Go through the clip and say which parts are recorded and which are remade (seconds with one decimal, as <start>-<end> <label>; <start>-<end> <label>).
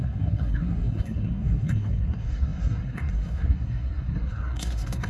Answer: 0.0-5.1 remade